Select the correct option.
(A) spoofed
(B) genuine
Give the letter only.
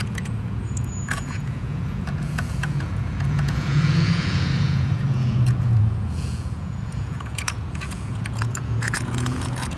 A